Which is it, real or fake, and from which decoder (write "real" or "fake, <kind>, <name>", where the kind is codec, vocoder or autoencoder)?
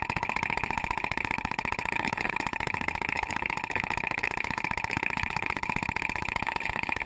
fake, codec, HILCodec